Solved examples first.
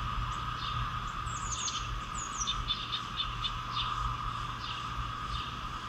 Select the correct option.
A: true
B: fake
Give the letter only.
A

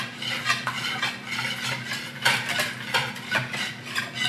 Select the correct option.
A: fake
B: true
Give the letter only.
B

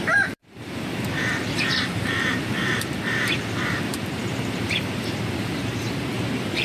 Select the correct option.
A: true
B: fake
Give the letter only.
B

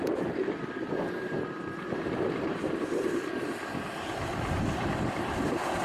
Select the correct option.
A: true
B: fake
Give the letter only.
B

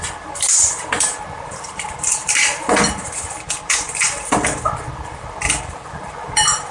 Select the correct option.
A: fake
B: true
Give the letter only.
A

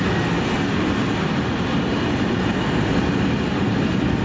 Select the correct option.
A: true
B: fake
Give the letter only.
A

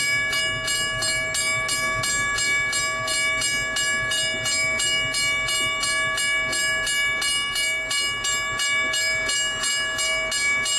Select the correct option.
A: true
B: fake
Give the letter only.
A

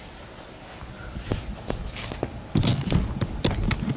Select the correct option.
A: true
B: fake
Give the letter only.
A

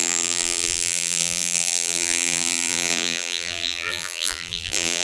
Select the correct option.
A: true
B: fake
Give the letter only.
B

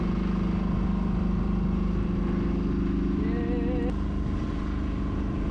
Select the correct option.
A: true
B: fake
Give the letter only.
A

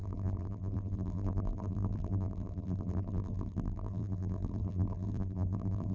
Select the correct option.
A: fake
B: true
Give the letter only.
A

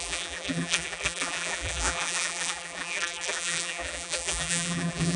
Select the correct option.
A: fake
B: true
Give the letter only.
A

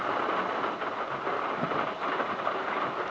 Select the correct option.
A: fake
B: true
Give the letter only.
B